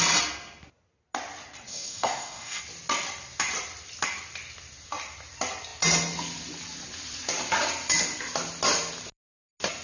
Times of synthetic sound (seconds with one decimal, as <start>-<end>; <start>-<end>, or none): 1.7-2.6